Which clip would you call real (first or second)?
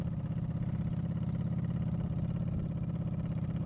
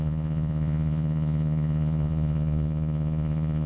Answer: first